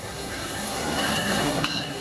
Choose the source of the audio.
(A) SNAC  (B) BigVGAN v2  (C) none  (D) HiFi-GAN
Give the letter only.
A